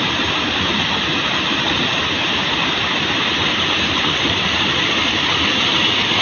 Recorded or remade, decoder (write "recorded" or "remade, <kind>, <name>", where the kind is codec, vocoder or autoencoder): recorded